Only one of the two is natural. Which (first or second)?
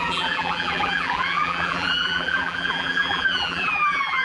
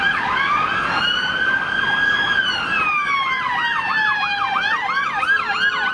second